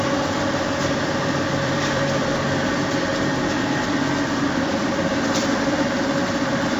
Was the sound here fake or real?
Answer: fake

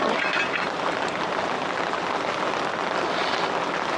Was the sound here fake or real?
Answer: real